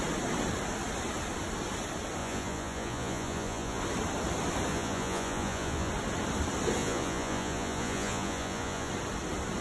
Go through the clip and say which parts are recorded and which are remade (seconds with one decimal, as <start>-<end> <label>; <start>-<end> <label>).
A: 0.0-2.2 recorded; 2.2-3.8 remade; 3.8-4.7 recorded; 4.7-5.9 remade; 5.9-6.8 recorded; 6.8-8.9 remade; 8.9-9.6 recorded